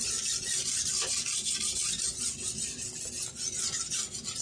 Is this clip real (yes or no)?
yes